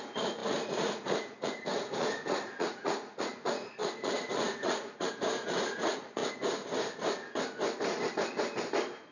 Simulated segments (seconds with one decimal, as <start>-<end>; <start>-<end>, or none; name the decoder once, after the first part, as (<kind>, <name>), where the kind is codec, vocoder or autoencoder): 0.0-6.2 (vocoder, Vocos)